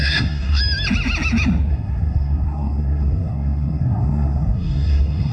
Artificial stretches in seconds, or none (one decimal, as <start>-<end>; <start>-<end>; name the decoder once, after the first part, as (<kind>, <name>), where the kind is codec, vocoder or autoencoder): 0.0-0.6 (codec, SNAC); 1.7-5.3

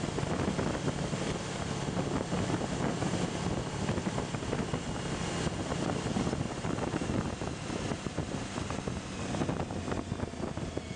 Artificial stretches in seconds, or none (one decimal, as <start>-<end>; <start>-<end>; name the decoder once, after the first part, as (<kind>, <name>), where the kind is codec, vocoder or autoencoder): none

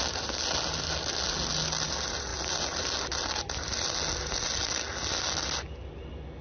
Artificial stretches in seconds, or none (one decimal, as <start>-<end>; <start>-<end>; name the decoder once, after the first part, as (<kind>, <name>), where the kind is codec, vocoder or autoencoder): none